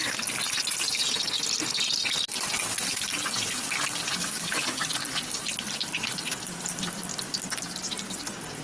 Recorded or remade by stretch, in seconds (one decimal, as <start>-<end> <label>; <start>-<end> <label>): 0.0-4.2 recorded; 4.2-4.9 remade; 4.9-8.6 recorded